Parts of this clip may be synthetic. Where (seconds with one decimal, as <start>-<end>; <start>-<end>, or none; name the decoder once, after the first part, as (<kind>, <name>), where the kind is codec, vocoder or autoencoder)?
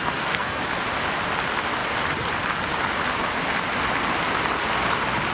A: 0.0-0.6 (codec, SNAC)